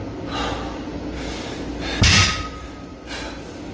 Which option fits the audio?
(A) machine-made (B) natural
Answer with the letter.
B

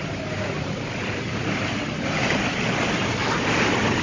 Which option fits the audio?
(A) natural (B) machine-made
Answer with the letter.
A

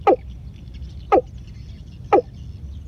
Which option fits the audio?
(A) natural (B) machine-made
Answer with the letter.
A